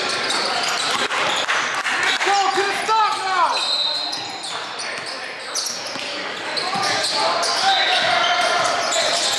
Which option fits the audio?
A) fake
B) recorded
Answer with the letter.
B